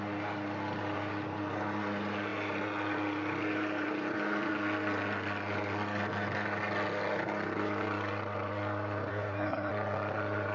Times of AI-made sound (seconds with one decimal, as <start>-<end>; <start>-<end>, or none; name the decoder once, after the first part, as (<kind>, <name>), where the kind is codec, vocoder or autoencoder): 9.1-9.7 (codec, SNAC)